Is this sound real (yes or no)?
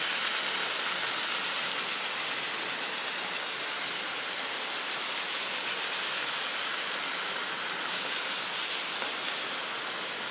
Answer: yes